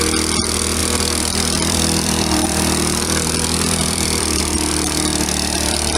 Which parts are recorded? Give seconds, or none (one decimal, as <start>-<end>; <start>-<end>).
0.0-0.8; 4.4-5.1